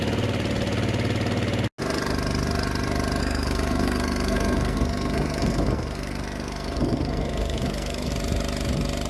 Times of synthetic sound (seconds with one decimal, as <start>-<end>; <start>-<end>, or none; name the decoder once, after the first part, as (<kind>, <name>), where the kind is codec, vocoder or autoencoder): 3.2-8.1 (codec, SNAC)